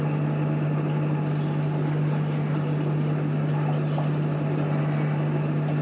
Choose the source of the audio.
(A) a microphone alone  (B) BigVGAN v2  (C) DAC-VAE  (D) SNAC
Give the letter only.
A